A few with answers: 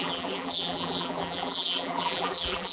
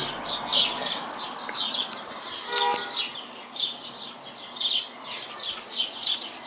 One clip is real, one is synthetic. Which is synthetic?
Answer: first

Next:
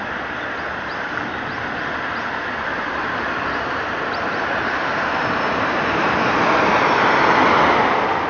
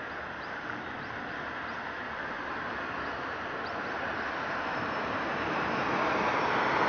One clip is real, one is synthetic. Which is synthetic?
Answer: first